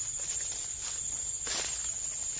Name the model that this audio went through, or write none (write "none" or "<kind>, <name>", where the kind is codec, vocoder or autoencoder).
none